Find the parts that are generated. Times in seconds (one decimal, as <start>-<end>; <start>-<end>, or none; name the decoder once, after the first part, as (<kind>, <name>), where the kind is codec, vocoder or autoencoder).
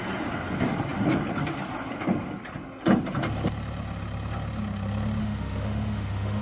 5.2-6.4 (autoencoder, DAC-VAE)